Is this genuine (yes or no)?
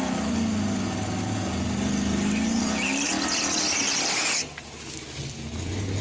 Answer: yes